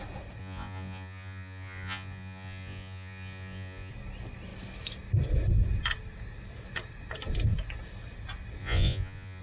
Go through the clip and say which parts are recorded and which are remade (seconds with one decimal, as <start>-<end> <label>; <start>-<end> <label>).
0.0-0.4 recorded; 0.4-3.9 remade; 3.9-8.6 recorded; 8.6-9.4 remade